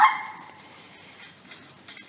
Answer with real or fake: fake